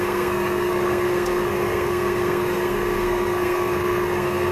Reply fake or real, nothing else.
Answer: fake